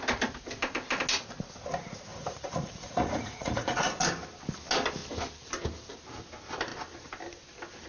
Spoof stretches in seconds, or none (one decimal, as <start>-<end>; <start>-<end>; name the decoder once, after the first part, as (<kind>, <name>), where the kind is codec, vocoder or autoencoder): 2.1-4.0 (vocoder, Vocos)